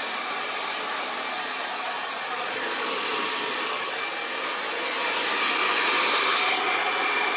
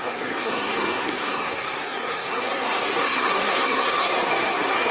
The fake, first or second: second